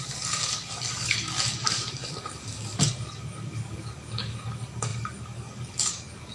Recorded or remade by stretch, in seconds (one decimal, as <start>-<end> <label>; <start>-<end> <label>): 0.0-6.3 remade